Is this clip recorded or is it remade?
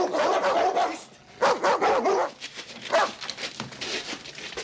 recorded